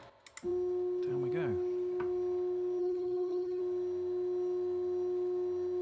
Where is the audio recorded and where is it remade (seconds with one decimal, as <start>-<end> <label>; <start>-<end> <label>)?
0.0-2.8 recorded; 2.8-3.6 remade; 3.6-5.8 recorded

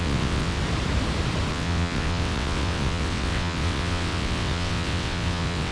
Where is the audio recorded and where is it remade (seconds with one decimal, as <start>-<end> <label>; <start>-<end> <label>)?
0.0-0.6 remade; 0.6-1.5 recorded; 1.5-5.7 remade

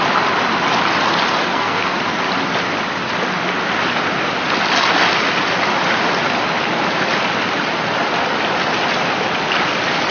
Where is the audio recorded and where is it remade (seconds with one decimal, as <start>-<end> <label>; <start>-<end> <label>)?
0.0-1.5 recorded; 1.5-2.0 remade; 2.0-10.1 recorded

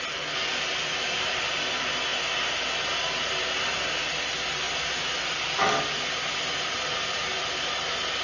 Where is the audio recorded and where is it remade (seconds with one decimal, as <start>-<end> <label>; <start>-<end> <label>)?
0.0-8.2 recorded

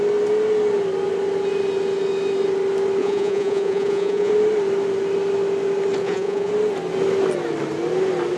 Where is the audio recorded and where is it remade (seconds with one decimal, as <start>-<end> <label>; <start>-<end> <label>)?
0.0-3.0 recorded; 3.0-4.3 remade; 4.3-6.0 recorded; 6.0-6.5 remade; 6.5-8.4 recorded